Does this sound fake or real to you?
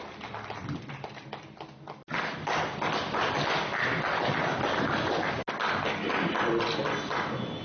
real